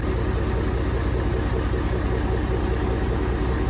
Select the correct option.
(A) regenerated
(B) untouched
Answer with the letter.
B